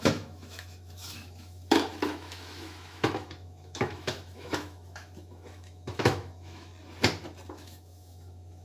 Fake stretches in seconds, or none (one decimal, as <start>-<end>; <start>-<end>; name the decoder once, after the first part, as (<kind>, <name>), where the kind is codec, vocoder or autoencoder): 0.0-6.7 (autoencoder, DAC-VAE); 7.5-8.6